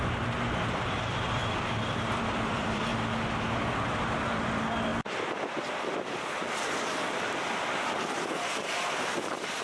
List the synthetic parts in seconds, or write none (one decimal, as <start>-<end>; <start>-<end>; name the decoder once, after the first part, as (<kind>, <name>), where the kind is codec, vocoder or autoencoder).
0.0-1.4 (vocoder, BigVGAN v2); 2.1-2.9; 4.0-9.6